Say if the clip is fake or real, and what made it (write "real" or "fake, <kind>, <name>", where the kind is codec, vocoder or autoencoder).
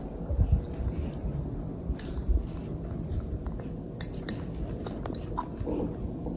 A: real